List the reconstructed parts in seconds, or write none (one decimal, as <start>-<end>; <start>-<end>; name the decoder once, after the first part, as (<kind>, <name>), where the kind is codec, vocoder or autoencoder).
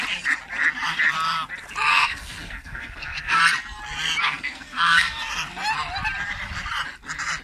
1.9-3.4 (codec, SNAC); 4.2-5.3